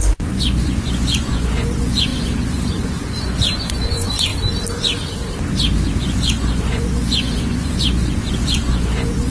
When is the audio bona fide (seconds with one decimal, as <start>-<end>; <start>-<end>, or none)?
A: 4.3-6.0